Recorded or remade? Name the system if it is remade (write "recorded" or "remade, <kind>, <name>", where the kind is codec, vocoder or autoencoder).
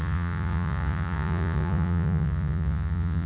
remade, vocoder, Vocos